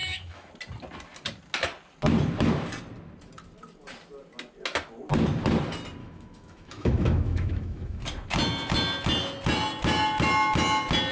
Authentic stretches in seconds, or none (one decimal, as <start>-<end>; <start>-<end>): 0.5-6.0; 8.0-11.1